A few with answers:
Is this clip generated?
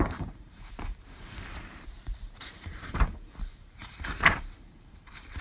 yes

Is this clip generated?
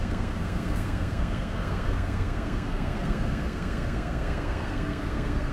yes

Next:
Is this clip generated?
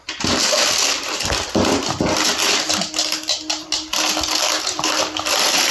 no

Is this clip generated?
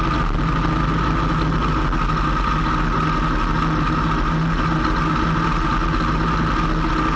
no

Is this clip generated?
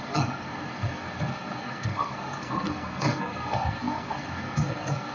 yes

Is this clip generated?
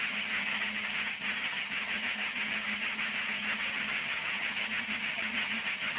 yes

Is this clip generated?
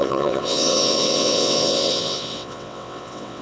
yes